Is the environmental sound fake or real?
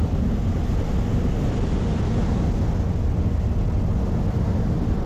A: real